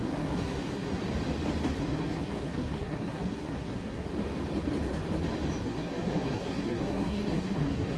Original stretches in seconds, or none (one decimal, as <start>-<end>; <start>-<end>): 1.0-1.8; 4.1-5.6